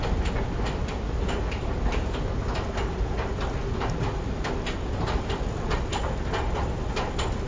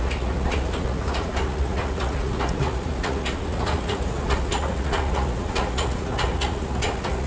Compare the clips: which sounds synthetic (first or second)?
second